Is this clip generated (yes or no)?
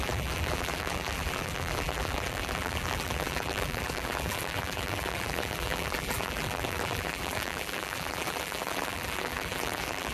yes